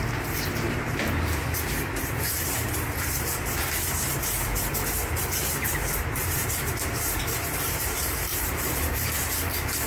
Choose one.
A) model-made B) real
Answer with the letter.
A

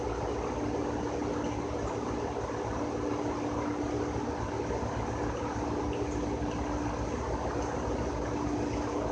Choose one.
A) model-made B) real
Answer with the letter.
B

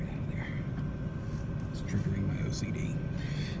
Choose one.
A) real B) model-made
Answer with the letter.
A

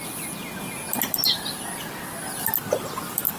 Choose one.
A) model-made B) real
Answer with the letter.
B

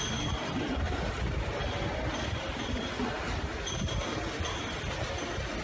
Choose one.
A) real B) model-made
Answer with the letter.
A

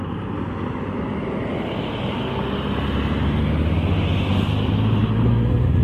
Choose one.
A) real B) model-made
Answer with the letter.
A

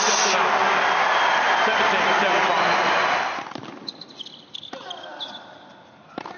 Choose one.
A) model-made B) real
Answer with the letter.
B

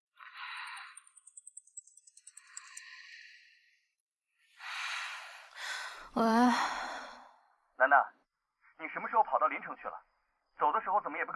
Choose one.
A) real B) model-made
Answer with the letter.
B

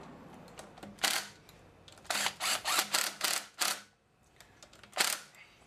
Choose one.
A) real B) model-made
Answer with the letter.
A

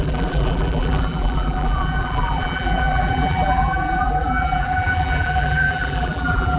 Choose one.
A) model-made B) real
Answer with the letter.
A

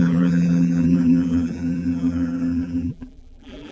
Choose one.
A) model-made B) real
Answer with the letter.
A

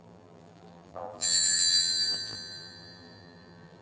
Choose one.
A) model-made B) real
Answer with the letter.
A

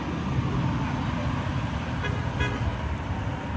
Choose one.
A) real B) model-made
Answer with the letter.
A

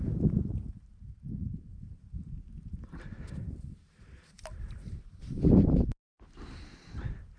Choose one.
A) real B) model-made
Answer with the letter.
B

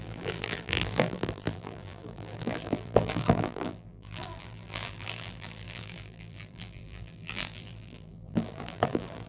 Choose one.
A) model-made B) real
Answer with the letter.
A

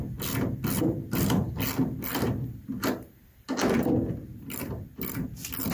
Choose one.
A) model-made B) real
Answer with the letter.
B